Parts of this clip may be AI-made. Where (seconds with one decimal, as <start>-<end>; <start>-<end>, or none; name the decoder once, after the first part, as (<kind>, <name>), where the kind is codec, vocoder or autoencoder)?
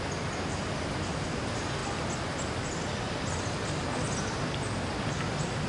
none